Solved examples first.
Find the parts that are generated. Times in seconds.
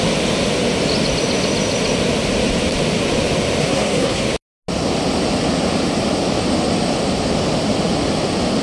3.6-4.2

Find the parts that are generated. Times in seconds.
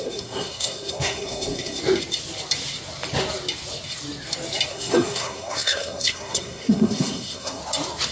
0.0-1.8; 4.7-7.6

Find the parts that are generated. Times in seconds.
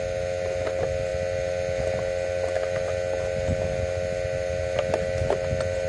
none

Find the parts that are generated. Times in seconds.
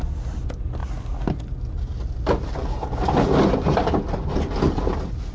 none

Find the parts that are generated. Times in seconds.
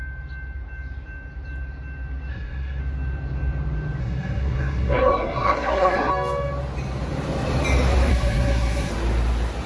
2.3-2.8; 4.0-6.1; 8.1-8.9